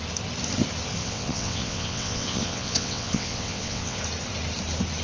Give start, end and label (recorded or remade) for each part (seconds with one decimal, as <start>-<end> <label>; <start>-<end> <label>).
0.0-1.0 recorded; 1.0-4.0 remade; 4.0-5.0 recorded